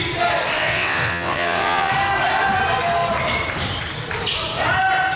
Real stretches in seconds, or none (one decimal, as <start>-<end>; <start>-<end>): 0.0-0.6; 1.9-5.2